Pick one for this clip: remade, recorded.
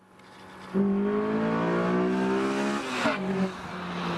recorded